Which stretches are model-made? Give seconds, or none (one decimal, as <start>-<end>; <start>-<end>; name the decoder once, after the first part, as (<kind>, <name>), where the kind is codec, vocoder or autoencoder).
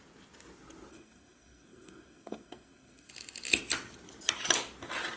0.9-3.1 (codec, SNAC)